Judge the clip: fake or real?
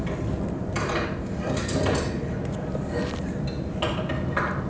real